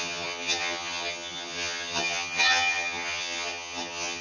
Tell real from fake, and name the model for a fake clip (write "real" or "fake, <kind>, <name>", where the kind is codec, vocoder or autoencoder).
fake, vocoder, HiFi-GAN